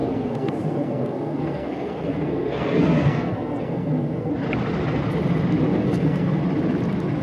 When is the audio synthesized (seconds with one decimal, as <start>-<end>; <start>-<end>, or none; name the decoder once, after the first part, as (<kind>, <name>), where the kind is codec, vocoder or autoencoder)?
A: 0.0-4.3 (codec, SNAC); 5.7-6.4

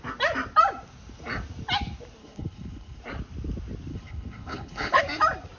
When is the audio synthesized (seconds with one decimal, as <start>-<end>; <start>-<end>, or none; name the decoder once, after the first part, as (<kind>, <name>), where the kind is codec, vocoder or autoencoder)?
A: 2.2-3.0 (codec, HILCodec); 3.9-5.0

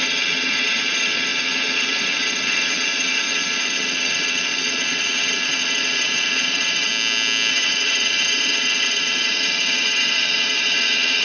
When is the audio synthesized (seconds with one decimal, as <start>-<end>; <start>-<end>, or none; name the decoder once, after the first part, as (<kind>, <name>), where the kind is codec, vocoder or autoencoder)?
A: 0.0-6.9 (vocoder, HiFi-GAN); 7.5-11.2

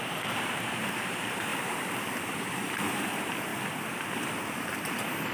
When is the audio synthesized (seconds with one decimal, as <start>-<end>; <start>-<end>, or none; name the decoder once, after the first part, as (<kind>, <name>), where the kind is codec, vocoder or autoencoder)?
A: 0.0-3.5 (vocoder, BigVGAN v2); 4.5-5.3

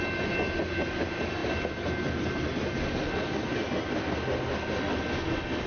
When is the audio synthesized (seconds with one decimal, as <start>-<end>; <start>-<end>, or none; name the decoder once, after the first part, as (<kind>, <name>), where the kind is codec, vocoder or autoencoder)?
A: none